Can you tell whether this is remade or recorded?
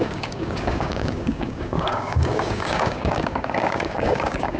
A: remade